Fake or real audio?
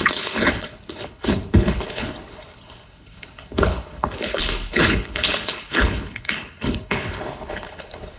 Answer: fake